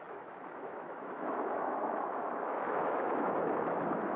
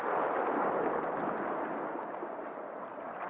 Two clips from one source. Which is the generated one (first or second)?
first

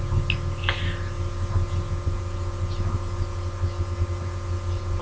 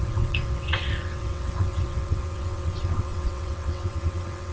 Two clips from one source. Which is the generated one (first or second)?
second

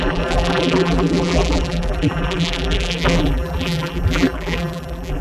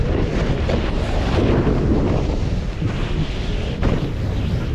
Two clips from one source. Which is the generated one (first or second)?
first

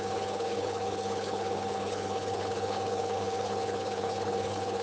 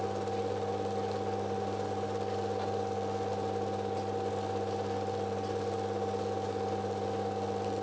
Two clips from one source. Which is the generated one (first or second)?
first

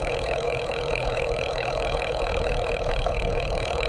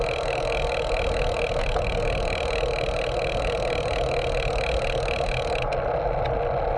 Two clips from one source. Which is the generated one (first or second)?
first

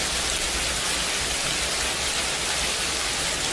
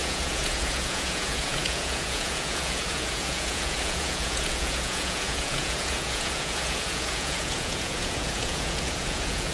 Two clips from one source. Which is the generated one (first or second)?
second